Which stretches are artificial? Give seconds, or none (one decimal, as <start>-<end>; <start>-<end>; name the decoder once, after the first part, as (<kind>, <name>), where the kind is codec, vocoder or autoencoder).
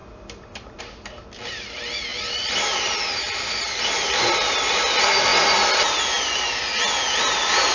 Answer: 0.0-0.8 (vocoder, BigVGAN v2); 2.1-4.8